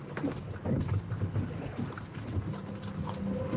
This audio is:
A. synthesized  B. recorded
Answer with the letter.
B